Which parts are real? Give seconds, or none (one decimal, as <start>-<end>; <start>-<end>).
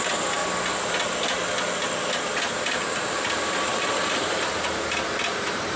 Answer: 0.4-2.1